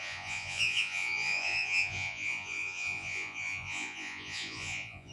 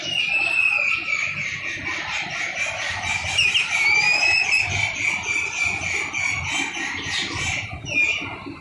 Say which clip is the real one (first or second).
second